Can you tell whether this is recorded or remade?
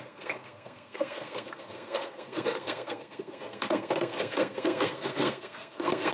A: remade